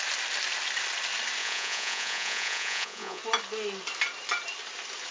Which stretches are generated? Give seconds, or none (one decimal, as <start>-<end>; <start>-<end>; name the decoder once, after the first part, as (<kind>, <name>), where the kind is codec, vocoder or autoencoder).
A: 1.4-3.2 (vocoder, Vocos)